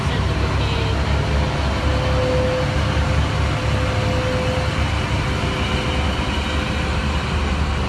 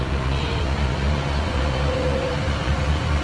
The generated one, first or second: second